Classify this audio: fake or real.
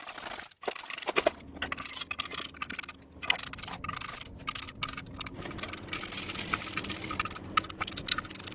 real